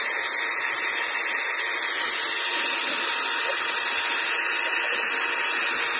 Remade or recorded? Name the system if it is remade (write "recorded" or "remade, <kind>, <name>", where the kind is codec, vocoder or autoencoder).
recorded